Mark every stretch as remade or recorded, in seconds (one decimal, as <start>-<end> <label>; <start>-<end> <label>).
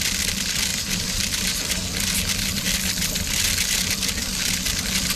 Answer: 0.0-0.7 recorded; 0.7-1.7 remade; 1.7-5.2 recorded